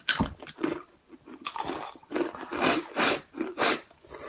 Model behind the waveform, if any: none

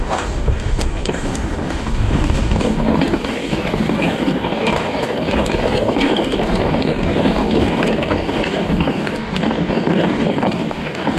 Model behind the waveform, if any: codec, DAC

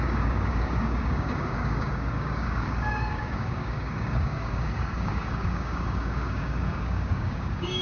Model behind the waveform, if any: codec, DAC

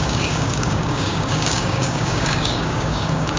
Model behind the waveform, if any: codec, DAC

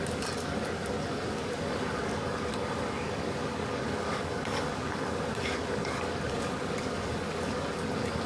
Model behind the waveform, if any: codec, DAC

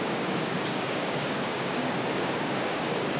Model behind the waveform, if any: codec, DAC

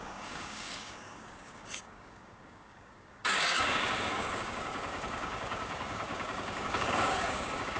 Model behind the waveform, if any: codec, DAC